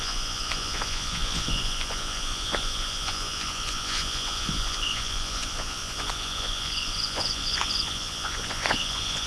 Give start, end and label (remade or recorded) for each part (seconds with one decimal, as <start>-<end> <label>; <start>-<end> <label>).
0.0-9.3 remade